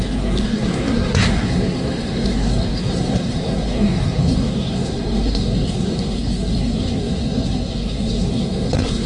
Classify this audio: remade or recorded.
remade